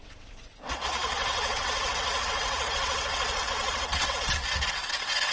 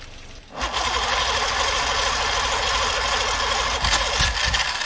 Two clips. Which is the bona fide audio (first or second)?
second